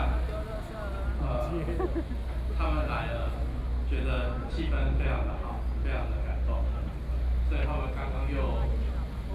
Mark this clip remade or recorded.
recorded